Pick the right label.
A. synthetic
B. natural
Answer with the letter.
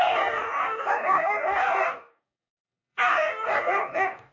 A